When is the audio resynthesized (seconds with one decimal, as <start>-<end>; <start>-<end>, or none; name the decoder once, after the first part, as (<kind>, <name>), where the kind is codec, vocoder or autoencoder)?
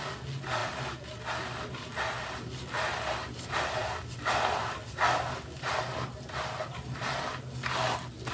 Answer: none